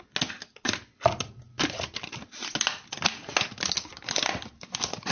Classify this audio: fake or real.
real